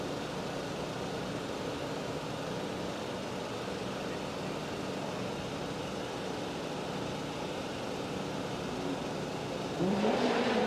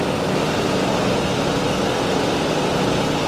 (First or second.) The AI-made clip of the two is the first